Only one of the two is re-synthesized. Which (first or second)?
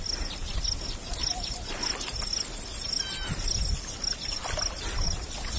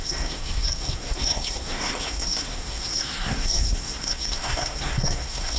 second